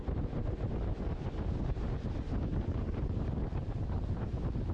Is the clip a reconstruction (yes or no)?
yes